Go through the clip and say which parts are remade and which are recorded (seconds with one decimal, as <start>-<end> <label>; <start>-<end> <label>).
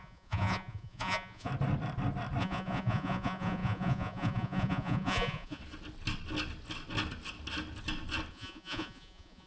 0.0-1.5 remade; 1.5-2.4 recorded; 2.4-5.6 remade; 5.6-8.3 recorded; 8.3-9.5 remade